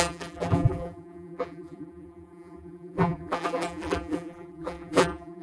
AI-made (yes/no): yes